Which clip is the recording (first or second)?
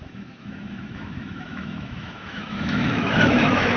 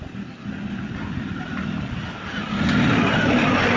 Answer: second